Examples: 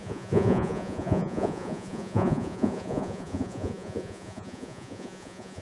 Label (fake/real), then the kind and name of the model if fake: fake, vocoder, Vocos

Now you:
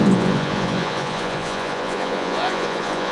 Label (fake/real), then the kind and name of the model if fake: fake, vocoder, Vocos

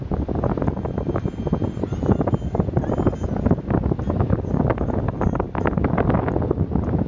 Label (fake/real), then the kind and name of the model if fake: real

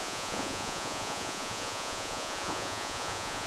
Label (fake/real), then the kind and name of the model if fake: fake, vocoder, Vocos